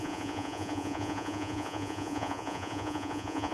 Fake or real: fake